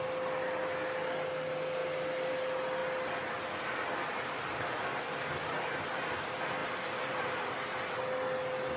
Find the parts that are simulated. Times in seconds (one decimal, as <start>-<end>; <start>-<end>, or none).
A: 6.6-7.8